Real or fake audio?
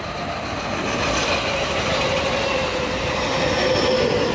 real